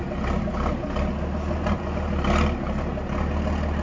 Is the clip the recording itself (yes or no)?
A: yes